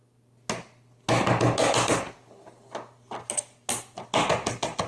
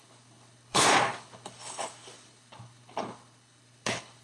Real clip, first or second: first